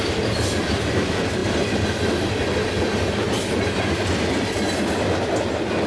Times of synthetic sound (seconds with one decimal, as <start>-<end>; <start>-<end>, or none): none